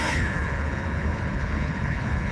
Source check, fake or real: fake